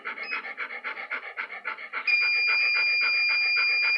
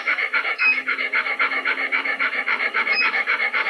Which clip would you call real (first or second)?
first